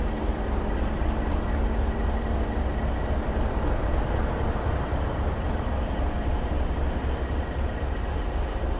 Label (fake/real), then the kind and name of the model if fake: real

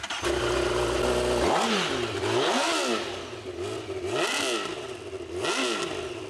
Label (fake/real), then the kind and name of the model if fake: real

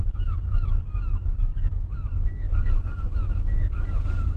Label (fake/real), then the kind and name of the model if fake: fake, codec, DAC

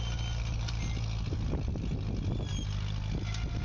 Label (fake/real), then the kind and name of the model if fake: real